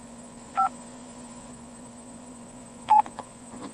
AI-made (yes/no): yes